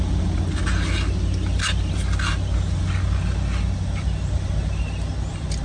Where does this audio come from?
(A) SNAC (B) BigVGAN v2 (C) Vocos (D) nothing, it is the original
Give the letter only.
D